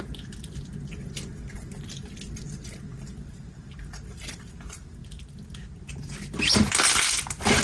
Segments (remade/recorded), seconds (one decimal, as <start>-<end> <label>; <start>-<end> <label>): 0.0-7.6 recorded